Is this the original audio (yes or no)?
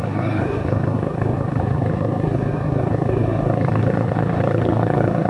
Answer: no